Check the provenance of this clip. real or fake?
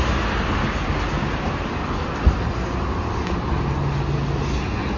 real